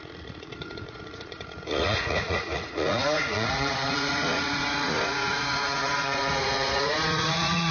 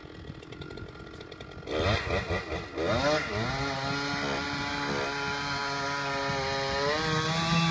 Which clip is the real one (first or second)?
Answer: second